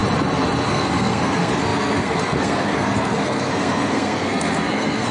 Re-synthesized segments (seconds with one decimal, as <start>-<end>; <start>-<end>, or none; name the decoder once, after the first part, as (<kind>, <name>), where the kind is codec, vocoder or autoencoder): 0.7-5.1 (codec, SNAC)